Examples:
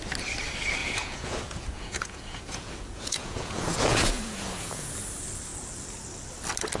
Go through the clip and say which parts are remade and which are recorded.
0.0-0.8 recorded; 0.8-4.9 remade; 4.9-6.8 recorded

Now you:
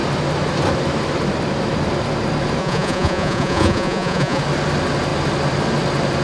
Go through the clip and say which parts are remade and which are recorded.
0.0-2.6 recorded; 2.6-4.4 remade; 4.4-6.2 recorded